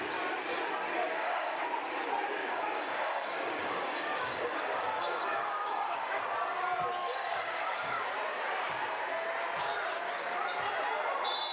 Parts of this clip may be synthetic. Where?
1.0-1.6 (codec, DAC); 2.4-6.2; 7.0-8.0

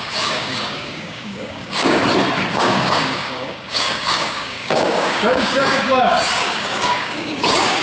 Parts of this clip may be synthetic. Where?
0.0-2.0 (codec, DAC); 2.5-7.8

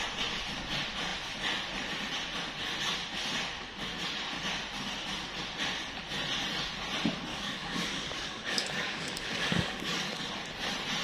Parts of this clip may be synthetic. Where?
7.3-10.2 (codec, DAC)

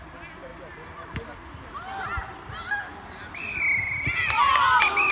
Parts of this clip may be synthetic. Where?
none

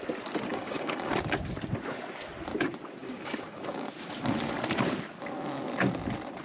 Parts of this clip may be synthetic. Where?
0.5-1.1 (codec, DAC); 3.0-3.9

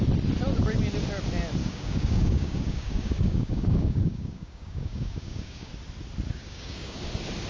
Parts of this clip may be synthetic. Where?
1.6-5.7 (codec, DAC); 6.4-7.0

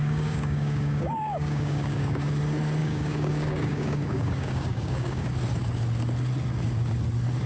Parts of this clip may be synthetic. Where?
0.0-2.3 (codec, DAC); 2.8-5.3